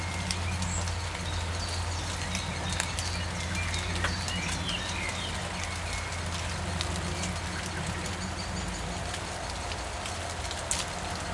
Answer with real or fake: real